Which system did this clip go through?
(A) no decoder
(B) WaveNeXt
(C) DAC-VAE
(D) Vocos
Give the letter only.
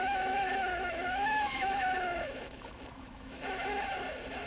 C